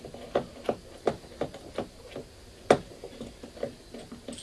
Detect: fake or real real